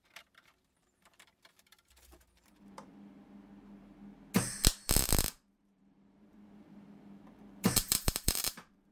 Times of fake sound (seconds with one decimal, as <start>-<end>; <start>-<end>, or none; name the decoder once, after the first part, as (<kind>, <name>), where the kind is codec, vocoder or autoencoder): 0.0-2.9 (vocoder, BigVGAN v2); 5.3-8.9